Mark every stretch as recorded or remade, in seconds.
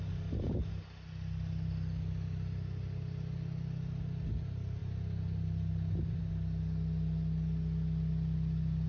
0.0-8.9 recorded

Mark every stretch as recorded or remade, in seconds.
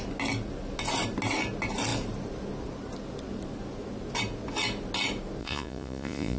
0.0-5.4 recorded; 5.4-6.4 remade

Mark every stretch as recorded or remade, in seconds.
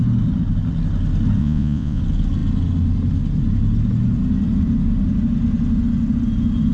0.0-1.4 recorded; 1.4-2.0 remade; 2.0-6.7 recorded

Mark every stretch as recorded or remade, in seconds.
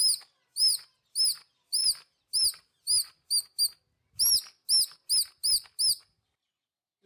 0.0-7.1 recorded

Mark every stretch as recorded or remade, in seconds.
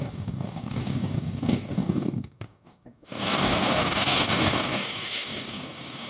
0.0-6.1 remade